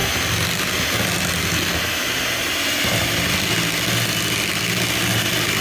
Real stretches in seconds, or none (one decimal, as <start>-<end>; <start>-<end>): 0.0-5.6